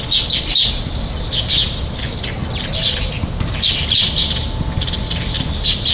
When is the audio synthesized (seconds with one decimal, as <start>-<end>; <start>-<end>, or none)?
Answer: none